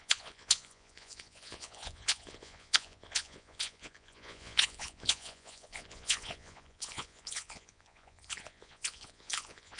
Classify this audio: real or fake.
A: fake